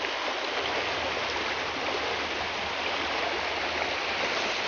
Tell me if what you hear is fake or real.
real